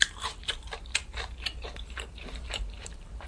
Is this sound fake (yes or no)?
yes